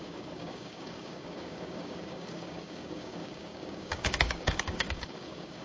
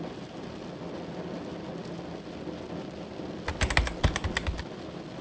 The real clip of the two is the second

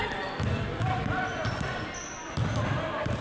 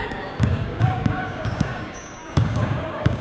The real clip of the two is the first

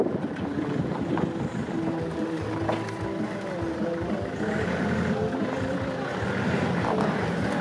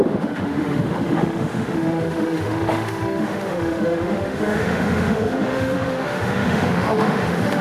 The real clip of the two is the first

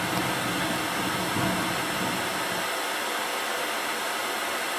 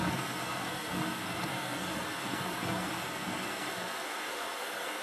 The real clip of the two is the first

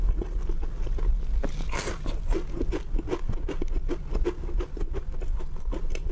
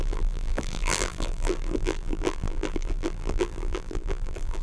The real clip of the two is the first